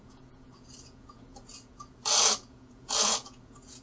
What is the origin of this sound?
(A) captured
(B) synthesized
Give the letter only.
B